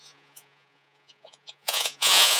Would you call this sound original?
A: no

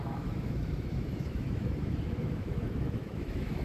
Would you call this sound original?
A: no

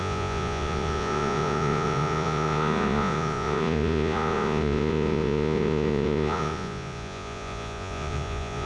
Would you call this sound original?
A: no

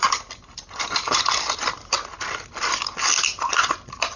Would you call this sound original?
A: yes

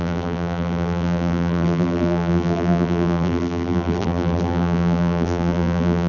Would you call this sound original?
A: no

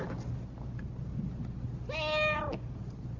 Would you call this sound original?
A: yes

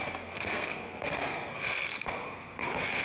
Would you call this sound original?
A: no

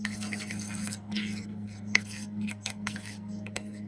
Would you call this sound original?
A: no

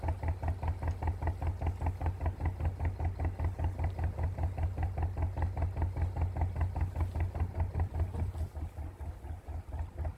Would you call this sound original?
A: yes